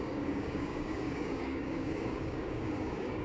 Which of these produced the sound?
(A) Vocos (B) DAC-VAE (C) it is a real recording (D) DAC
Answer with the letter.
D